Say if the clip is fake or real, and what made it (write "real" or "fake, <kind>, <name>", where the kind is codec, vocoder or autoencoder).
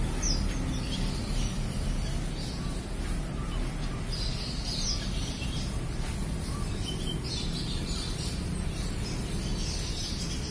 real